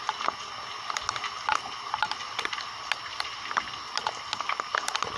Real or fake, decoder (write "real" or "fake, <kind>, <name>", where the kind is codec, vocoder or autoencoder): real